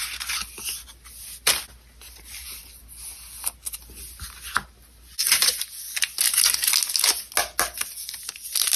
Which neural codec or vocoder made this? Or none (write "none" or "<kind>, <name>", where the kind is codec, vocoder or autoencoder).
none